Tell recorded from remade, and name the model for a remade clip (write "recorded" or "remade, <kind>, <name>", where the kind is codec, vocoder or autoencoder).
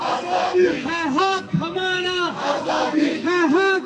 remade, codec, SNAC